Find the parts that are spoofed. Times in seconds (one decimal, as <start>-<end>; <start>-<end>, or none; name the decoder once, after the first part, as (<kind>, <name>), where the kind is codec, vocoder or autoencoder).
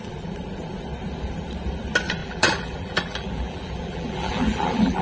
2.2-5.0 (vocoder, BigVGAN v2)